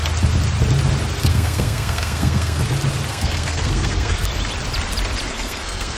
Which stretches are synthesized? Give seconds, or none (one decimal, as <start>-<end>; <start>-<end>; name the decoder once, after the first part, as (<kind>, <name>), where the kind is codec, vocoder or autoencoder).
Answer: 1.3-2.6 (codec, SNAC); 3.1-4.3; 5.3-6.0